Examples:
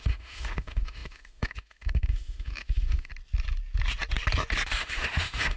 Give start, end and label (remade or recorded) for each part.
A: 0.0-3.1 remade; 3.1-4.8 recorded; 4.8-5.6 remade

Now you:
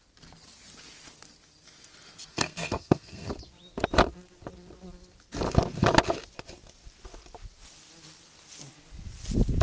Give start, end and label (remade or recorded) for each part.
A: 0.0-2.3 recorded; 2.3-3.3 remade; 3.3-9.6 recorded

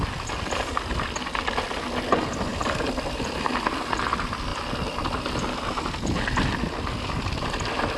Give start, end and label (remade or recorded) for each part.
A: 0.0-2.5 recorded; 2.5-3.9 remade; 3.9-8.0 recorded

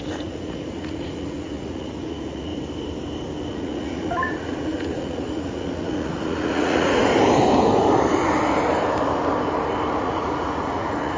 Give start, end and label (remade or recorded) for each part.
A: 0.0-2.5 remade; 2.5-3.5 recorded; 3.5-7.0 remade; 7.0-10.0 recorded; 10.0-11.2 remade

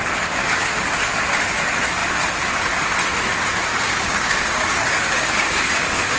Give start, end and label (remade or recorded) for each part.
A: 0.0-3.7 recorded; 3.7-6.2 remade

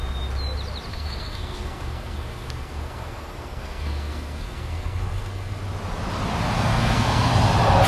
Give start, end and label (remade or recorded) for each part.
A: 0.0-0.9 recorded; 0.9-5.6 remade; 5.6-6.7 recorded; 6.7-7.3 remade; 7.3-7.9 recorded